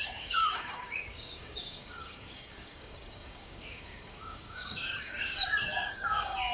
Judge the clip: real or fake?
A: fake